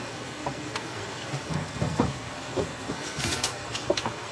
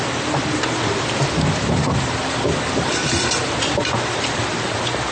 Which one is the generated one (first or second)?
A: first